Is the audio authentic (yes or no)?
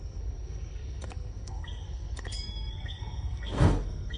no